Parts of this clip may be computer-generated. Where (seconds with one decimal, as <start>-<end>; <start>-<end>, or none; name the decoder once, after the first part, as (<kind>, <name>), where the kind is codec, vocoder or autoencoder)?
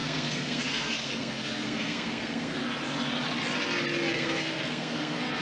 0.0-2.6 (codec, SNAC); 4.1-5.4